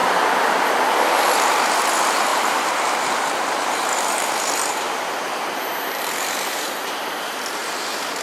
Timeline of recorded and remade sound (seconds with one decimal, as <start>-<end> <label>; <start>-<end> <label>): 0.0-0.9 recorded; 0.9-8.2 remade